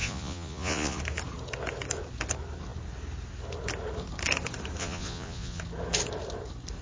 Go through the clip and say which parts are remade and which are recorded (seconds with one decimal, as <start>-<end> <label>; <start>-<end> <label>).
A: 0.0-1.0 remade; 1.0-4.8 recorded; 4.8-5.6 remade; 5.6-6.8 recorded